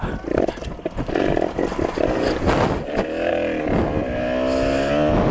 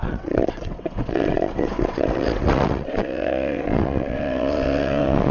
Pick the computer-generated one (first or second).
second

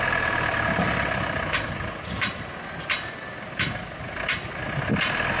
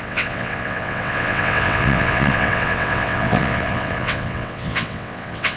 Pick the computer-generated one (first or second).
second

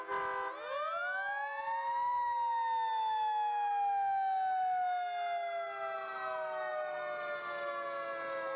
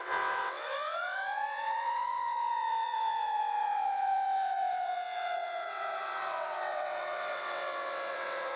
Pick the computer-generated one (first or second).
second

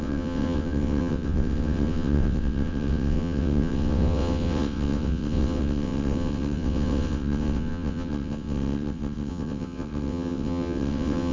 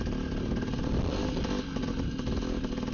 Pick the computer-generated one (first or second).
first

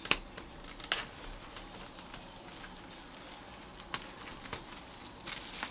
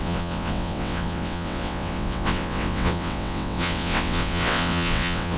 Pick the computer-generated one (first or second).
second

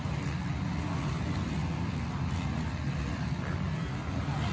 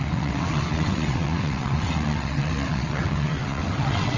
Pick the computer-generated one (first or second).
second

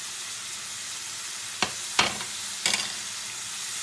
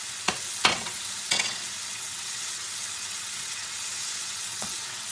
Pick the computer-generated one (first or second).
second